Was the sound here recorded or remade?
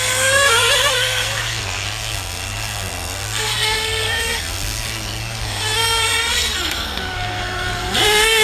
remade